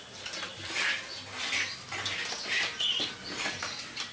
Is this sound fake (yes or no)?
no